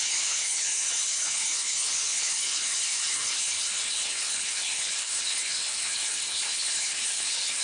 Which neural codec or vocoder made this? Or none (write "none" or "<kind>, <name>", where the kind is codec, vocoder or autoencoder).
codec, HILCodec